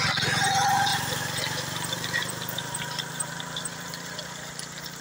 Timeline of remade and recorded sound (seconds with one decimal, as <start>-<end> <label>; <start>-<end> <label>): 0.0-0.9 recorded; 0.9-3.9 remade; 3.9-5.0 recorded